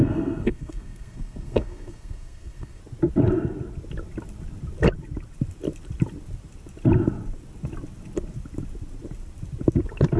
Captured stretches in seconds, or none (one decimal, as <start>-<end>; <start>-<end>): 2.8-10.2